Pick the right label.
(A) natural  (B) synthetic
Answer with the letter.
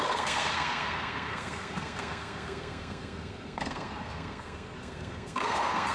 B